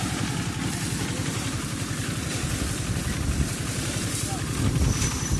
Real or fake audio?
fake